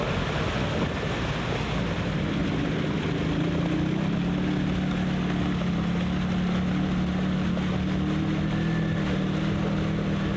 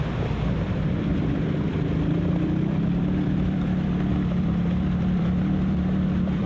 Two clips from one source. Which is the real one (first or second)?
first